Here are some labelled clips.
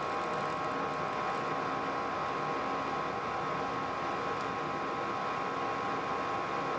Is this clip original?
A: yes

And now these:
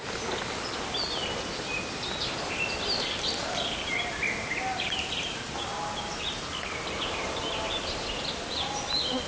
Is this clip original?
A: yes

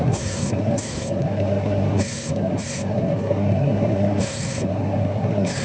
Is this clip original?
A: no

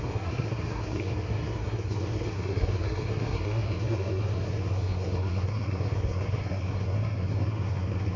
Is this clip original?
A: no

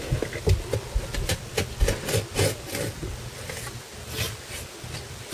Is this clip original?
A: yes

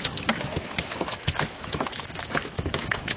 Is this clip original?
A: no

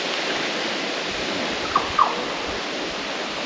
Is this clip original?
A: yes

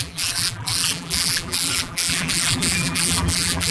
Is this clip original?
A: no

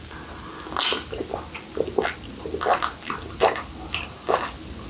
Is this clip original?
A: yes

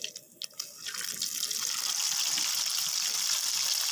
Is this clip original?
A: yes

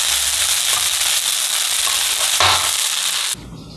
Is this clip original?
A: yes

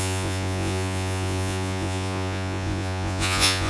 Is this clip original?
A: no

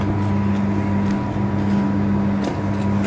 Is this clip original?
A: yes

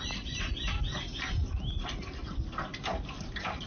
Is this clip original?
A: yes